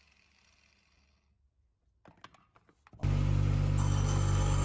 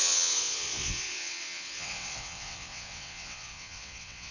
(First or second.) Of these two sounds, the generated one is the second